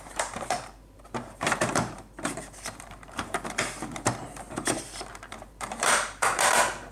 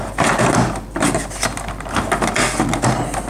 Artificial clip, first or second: first